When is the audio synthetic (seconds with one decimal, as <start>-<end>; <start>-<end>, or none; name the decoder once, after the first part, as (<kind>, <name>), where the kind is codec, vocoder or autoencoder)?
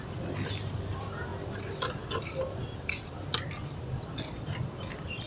none